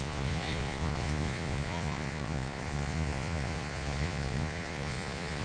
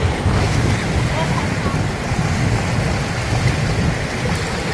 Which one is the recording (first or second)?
second